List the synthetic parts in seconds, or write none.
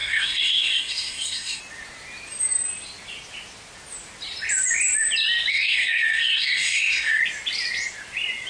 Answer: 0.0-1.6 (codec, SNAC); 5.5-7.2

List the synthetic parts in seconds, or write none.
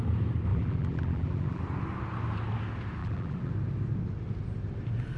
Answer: 0.5-1.6 (vocoder, BigVGAN v2); 3.0-3.5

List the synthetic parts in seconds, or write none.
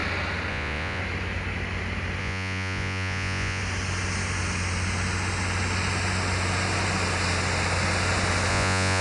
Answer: 0.5-1.0 (vocoder, Vocos); 2.2-3.6; 8.5-9.0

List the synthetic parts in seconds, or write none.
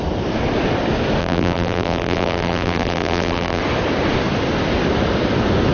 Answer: 1.2-3.6 (vocoder, BigVGAN v2)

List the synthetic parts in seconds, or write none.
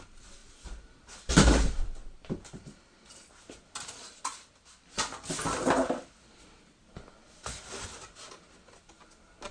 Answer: none